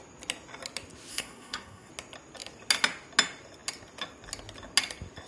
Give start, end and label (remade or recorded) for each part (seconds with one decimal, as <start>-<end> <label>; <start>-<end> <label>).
0.0-1.1 recorded; 1.1-1.9 remade; 1.9-5.3 recorded

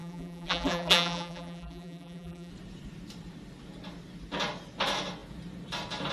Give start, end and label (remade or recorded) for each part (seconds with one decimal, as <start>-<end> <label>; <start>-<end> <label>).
0.0-2.5 remade; 2.5-6.1 recorded

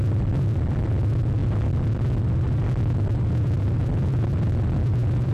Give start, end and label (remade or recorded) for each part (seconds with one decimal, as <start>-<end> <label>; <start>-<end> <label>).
0.0-5.3 remade

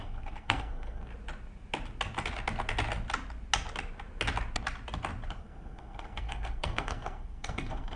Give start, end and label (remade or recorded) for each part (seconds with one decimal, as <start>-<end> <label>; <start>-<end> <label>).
0.0-1.1 remade; 1.1-5.3 recorded; 5.3-8.0 remade